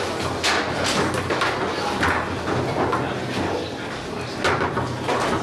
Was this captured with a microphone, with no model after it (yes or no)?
yes